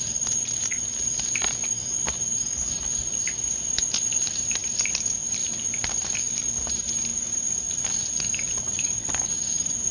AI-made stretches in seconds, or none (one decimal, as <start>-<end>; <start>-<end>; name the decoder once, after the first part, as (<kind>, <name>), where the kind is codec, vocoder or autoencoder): none